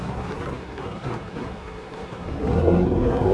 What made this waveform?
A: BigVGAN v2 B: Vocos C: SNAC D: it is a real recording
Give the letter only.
C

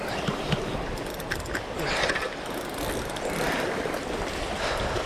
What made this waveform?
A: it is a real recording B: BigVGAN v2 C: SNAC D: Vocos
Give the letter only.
A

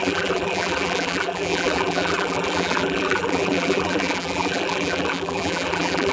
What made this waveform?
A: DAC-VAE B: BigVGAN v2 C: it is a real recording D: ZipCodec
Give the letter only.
B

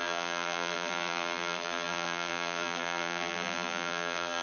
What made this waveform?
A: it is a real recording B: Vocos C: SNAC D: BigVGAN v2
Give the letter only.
D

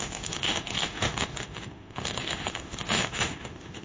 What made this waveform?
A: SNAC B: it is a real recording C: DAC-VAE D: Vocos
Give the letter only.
C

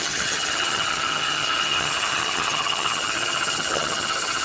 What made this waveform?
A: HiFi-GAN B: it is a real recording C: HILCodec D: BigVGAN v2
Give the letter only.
A